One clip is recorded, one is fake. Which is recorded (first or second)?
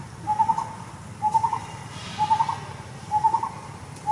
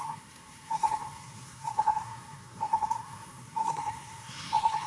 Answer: first